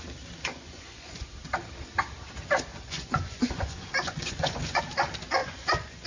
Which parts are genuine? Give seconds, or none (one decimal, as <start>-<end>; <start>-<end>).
0.0-0.5; 1.3-2.7; 4.8-5.4